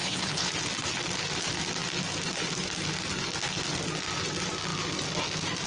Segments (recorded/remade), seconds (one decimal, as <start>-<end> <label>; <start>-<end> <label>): 0.0-0.5 remade; 0.5-5.7 recorded